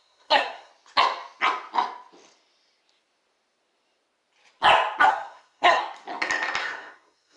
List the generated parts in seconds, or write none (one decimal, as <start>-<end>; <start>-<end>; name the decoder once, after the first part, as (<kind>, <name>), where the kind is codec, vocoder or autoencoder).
0.0-0.7 (codec, SNAC); 5.1-5.8; 6.6-7.4